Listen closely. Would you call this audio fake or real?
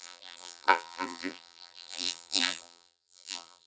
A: fake